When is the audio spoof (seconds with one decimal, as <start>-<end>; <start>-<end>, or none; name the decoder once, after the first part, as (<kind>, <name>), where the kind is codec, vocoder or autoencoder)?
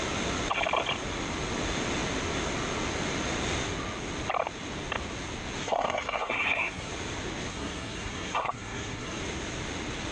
5.6-6.9 (codec, SNAC); 7.5-9.2